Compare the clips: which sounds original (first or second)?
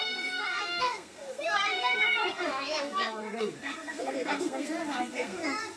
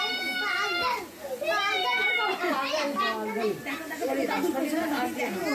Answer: second